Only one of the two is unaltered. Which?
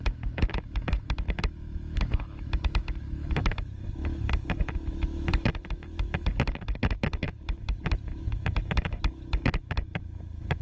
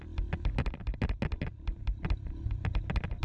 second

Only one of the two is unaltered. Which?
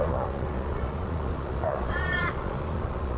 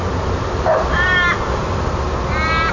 second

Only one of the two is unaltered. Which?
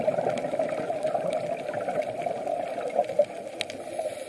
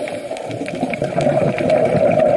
first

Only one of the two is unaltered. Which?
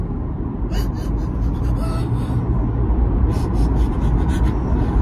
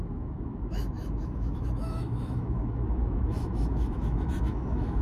first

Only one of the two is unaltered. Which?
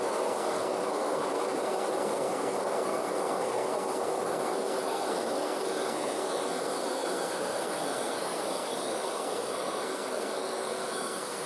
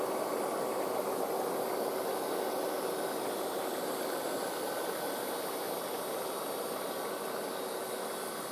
second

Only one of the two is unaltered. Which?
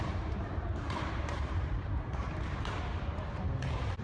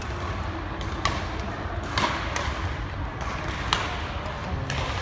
second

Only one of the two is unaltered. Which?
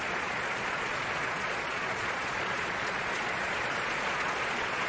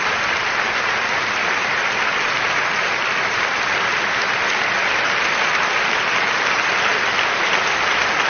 second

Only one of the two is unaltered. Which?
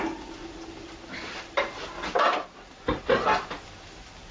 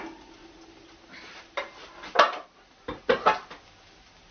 second